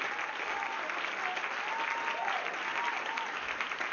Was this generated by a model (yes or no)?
no